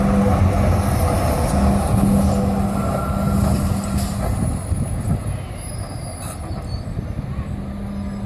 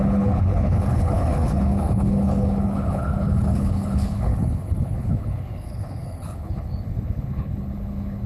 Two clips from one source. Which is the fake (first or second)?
second